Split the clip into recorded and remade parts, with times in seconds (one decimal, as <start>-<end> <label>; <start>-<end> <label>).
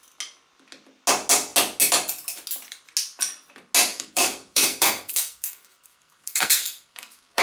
0.0-3.9 recorded; 3.9-7.4 remade